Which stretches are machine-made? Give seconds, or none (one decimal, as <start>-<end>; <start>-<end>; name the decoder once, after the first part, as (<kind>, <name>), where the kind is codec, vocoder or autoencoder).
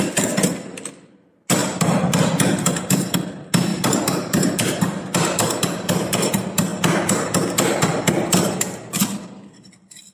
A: 1.6-2.3 (vocoder, BigVGAN v2); 3.7-6.3